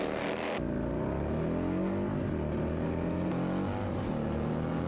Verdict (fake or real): real